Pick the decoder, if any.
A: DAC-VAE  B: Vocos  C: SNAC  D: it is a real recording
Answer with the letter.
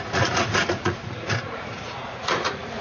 B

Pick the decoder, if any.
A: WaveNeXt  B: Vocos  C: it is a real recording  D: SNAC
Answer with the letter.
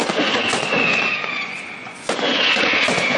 B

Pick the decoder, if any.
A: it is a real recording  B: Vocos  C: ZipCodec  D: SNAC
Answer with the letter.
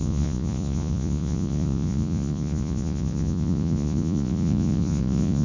B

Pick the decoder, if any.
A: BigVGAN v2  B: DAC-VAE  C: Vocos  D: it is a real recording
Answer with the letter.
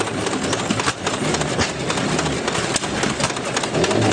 D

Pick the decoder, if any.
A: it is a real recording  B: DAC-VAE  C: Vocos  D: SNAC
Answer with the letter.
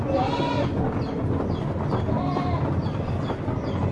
A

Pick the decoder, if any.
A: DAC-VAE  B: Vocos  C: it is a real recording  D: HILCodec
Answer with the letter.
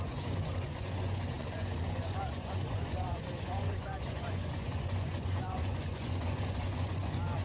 B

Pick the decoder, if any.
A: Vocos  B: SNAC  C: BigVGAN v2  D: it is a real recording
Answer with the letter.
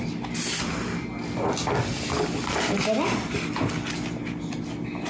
D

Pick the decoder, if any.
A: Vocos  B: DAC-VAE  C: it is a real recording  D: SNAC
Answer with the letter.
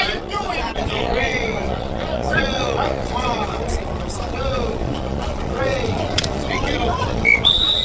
A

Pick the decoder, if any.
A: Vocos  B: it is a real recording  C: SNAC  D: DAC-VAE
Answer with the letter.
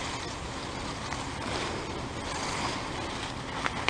B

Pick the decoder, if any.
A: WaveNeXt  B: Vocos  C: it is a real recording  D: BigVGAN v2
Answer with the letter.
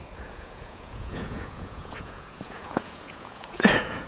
B